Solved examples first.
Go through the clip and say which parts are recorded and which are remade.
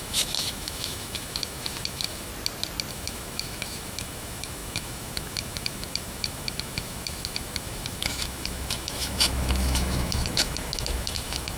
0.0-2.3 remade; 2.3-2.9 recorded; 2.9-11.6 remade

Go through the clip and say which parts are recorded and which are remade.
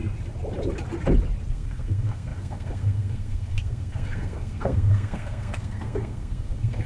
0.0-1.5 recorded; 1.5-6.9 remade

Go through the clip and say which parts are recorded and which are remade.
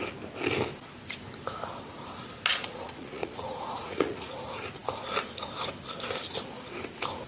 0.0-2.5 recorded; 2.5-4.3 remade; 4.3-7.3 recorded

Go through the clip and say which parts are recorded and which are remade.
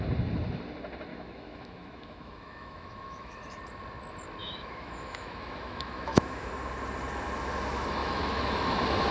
0.0-1.1 recorded; 1.1-3.6 remade; 3.6-4.4 recorded; 4.4-6.5 remade; 6.5-8.0 recorded; 8.0-8.7 remade; 8.7-9.1 recorded